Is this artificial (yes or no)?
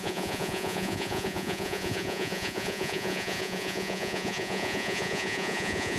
yes